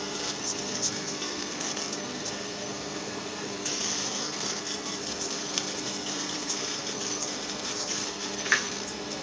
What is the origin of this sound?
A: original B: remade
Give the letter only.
B